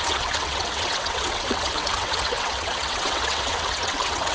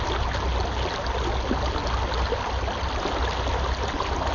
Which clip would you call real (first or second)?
second